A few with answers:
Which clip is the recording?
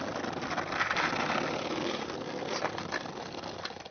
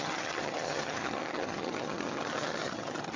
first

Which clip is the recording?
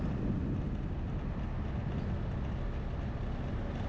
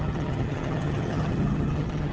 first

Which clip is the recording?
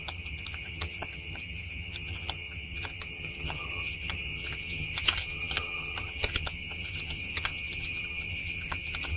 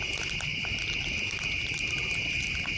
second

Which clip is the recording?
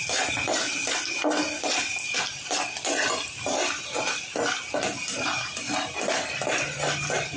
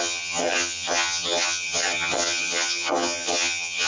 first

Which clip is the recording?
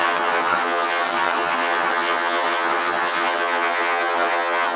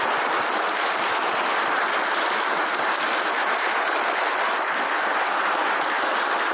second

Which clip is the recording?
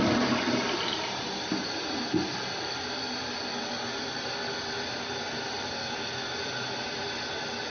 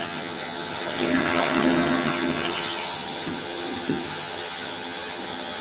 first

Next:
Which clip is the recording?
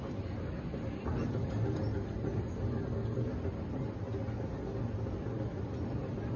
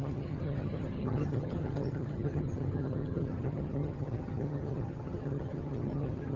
first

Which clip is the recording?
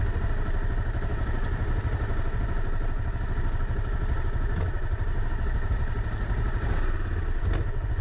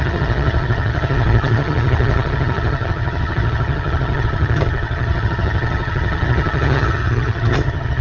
first